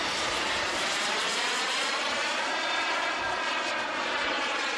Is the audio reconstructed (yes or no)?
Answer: yes